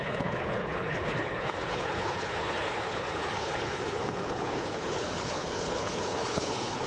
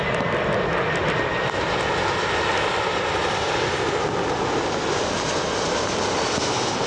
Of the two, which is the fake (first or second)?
first